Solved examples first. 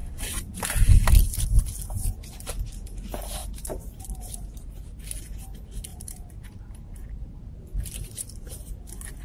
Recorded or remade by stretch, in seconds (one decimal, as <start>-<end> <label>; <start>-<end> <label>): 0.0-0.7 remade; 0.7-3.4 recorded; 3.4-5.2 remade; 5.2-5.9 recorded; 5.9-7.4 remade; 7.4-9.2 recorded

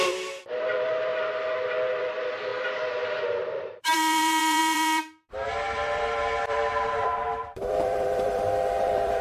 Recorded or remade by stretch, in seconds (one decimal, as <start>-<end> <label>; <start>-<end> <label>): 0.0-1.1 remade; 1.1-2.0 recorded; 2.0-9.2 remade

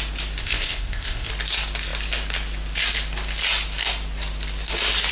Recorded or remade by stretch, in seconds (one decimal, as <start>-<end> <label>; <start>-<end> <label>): 0.0-0.4 recorded; 0.4-1.3 remade; 1.3-5.1 recorded

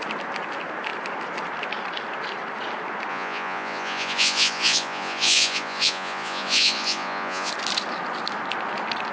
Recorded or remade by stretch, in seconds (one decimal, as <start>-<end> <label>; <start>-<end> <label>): 0.0-3.1 recorded; 3.1-7.5 remade; 7.5-9.1 recorded

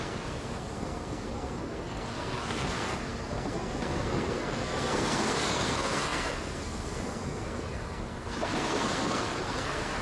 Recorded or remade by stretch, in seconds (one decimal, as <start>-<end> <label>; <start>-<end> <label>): 0.0-10.0 remade

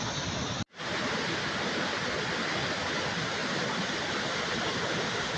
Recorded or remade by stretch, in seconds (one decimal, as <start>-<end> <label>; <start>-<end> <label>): 0.0-3.4 recorded; 3.4-4.1 remade; 4.1-5.4 recorded